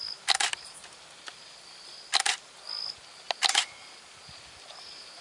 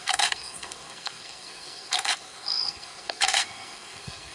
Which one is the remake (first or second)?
second